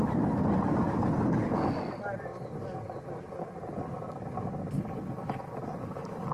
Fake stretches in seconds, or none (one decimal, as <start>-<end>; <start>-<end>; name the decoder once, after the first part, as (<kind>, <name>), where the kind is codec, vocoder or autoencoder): none